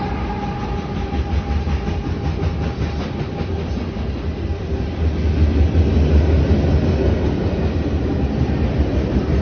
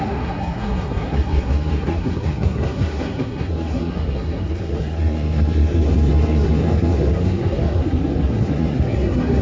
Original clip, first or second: first